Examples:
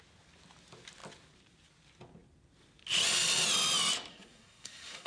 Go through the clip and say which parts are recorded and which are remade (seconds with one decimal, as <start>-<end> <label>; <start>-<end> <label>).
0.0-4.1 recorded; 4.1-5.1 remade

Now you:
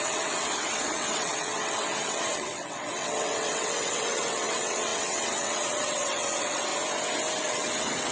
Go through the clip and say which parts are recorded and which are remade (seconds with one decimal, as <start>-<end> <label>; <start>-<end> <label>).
0.0-6.7 remade; 6.7-7.4 recorded; 7.4-8.1 remade

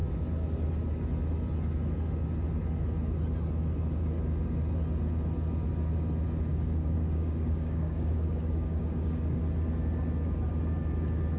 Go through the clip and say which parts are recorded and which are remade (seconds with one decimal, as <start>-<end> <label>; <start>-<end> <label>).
0.0-6.5 recorded; 6.5-9.4 remade; 9.4-11.4 recorded

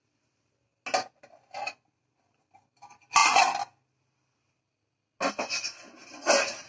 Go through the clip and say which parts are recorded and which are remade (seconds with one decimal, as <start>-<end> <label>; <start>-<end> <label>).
0.0-6.7 recorded

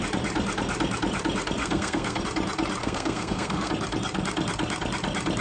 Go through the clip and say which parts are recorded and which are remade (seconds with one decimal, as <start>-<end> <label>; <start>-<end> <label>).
0.0-1.6 recorded; 1.6-2.2 remade; 2.2-2.8 recorded; 2.8-3.7 remade; 3.7-5.4 recorded

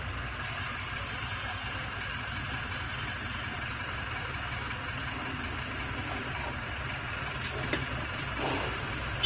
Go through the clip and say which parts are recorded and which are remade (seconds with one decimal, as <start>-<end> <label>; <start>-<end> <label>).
0.0-9.3 remade